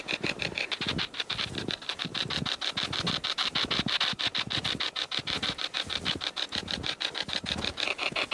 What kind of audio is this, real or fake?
real